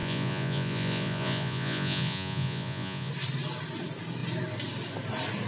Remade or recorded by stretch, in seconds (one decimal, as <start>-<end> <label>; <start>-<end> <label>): 0.0-3.1 remade; 3.1-5.5 recorded